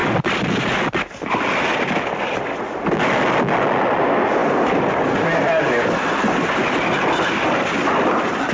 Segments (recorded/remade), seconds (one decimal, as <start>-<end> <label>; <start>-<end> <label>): 0.0-8.5 recorded